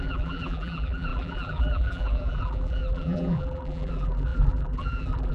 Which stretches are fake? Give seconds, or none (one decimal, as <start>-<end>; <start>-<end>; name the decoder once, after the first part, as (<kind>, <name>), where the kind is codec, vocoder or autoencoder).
0.0-5.3 (vocoder, BigVGAN v2)